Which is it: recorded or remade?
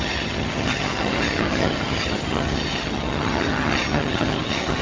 remade